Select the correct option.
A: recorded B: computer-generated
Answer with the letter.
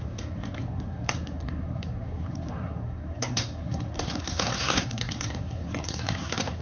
B